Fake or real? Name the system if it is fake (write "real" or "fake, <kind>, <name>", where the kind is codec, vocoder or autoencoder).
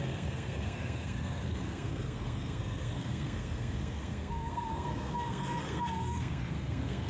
fake, codec, SNAC